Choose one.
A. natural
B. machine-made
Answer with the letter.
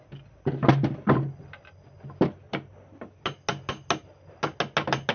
A